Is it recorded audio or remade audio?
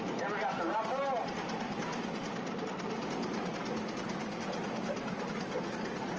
recorded